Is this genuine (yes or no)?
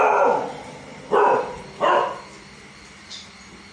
yes